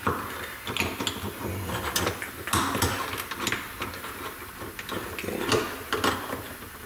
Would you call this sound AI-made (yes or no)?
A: no